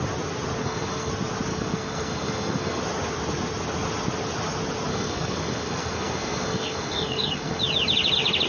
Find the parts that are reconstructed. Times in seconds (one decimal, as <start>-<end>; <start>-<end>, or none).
0.6-1.1; 1.5-2.8; 4.9-7.6